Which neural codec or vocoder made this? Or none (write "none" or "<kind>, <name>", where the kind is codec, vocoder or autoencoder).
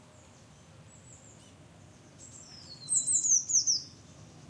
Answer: none